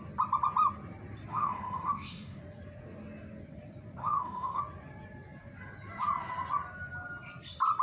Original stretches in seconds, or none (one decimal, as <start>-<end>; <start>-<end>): 0.0-1.3; 2.4-4.0; 4.6-7.8